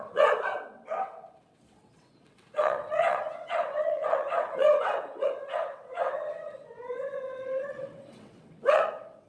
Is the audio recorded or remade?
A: remade